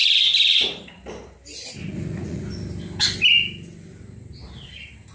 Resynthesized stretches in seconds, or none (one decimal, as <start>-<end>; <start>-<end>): 1.8-2.5